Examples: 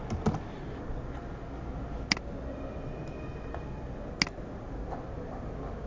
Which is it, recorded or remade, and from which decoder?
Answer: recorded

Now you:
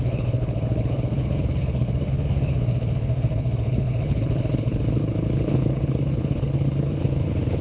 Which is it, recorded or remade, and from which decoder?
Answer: remade, codec, HILCodec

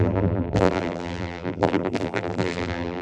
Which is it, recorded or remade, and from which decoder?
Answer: remade, vocoder, BigVGAN v2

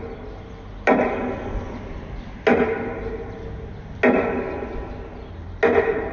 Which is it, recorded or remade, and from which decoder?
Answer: recorded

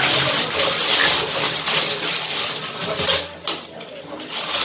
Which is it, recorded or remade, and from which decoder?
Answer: recorded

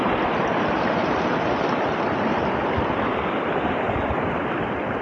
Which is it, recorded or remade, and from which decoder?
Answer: remade, vocoder, BigVGAN v2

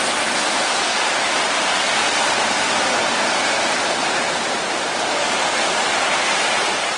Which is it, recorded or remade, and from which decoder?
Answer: recorded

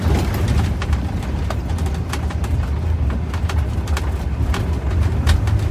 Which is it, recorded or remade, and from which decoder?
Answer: recorded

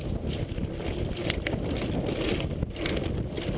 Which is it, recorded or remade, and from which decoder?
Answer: recorded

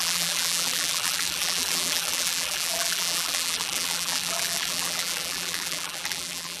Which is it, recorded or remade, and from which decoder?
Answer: remade, vocoder, BigVGAN v2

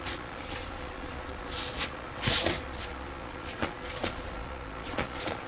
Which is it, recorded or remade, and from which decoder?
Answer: remade, vocoder, Vocos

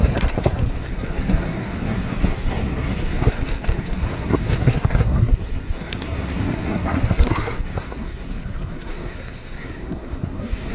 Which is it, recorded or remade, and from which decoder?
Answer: remade, codec, SNAC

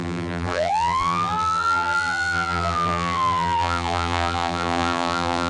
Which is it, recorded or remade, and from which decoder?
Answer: remade, vocoder, BigVGAN v2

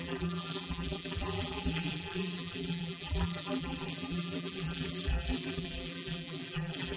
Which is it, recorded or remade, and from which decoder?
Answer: remade, vocoder, BigVGAN v2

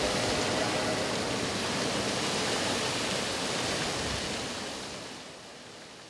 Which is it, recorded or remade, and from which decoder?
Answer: recorded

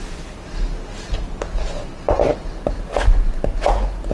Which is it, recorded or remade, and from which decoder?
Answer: recorded